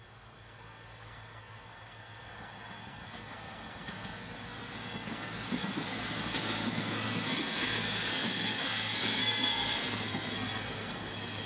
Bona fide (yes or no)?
no